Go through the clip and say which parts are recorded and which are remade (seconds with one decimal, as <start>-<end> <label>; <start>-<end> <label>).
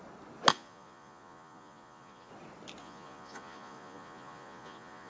0.0-0.5 recorded; 0.5-2.3 remade; 2.3-2.8 recorded; 2.8-5.1 remade